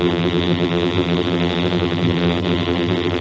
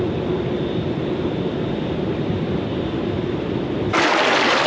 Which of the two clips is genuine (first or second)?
second